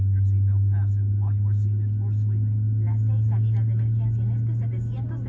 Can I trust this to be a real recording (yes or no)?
yes